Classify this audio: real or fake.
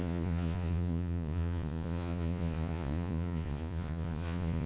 fake